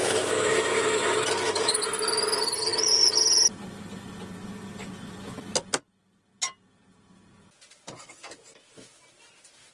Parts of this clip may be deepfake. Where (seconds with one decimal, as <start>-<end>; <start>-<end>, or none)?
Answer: 0.0-1.8